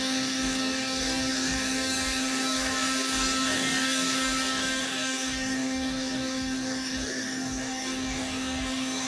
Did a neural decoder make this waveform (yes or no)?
yes